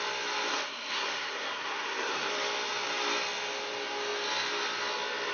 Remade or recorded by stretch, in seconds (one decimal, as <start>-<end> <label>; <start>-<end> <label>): 0.0-0.5 recorded; 0.5-2.3 remade; 2.3-5.3 recorded